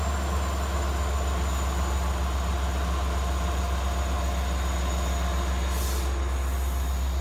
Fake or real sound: real